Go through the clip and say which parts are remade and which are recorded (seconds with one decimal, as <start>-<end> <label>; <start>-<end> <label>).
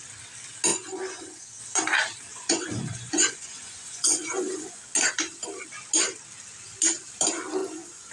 0.0-0.7 recorded; 0.7-1.6 remade; 1.6-2.3 recorded; 2.3-4.8 remade; 4.8-7.6 recorded; 7.6-8.1 remade